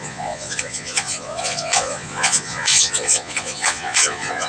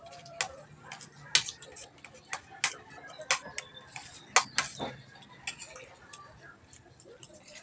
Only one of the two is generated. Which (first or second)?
first